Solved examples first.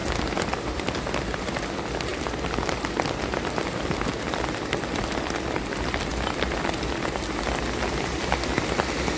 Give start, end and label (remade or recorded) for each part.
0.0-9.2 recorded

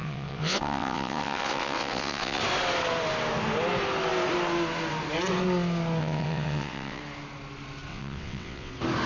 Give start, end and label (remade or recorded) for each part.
0.0-2.4 remade; 2.4-6.0 recorded; 6.0-7.0 remade; 7.0-7.9 recorded; 7.9-8.7 remade; 8.7-9.1 recorded

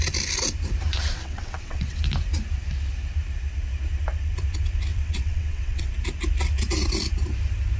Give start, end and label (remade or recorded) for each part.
0.0-0.9 recorded; 0.9-2.0 remade; 2.0-4.9 recorded; 4.9-5.9 remade; 5.9-7.8 recorded

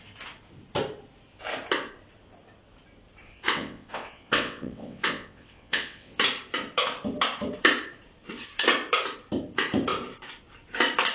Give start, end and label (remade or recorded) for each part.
0.0-3.2 recorded; 3.2-6.2 remade; 6.2-11.1 recorded

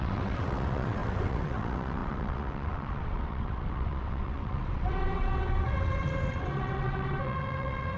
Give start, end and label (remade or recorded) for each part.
0.0-8.0 remade

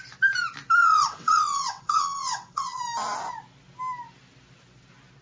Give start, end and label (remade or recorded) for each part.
0.0-0.8 recorded; 0.8-2.8 remade; 2.8-5.2 recorded

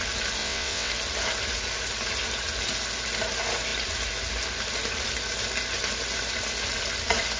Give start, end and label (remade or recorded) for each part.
0.0-0.4 recorded; 0.4-0.9 remade; 0.9-7.4 recorded